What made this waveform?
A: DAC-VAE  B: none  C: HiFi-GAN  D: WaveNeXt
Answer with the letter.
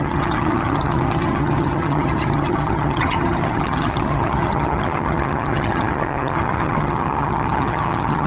C